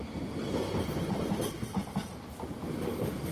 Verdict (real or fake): real